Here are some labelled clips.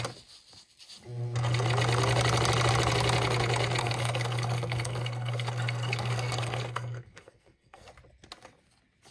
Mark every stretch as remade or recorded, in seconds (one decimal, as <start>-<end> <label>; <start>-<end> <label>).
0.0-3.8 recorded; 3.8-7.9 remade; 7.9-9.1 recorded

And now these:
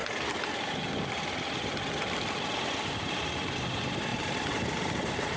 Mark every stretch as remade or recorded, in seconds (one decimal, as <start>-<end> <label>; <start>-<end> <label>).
0.0-5.4 recorded

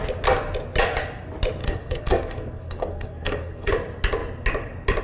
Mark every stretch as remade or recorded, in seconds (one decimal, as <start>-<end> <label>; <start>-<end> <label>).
0.0-1.6 recorded; 1.6-3.7 remade; 3.7-5.0 recorded

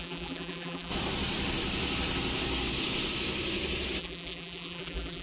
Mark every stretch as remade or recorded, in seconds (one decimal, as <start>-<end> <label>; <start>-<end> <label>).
0.0-0.9 remade; 0.9-4.0 recorded; 4.0-5.2 remade

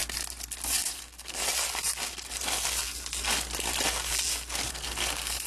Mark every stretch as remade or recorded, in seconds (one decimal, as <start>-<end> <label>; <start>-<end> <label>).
0.0-0.9 recorded; 0.9-1.4 remade; 1.4-4.7 recorded; 4.7-5.5 remade

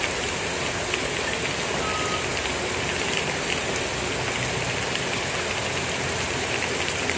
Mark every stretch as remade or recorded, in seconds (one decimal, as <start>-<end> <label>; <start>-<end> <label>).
0.0-7.2 recorded

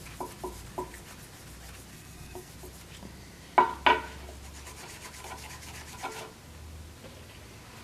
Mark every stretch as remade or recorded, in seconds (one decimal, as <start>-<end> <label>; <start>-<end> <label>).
0.0-1.9 recorded; 1.9-2.5 remade; 2.5-7.8 recorded